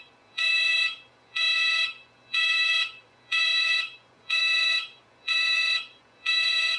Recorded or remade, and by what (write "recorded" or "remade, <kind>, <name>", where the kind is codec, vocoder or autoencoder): remade, vocoder, Vocos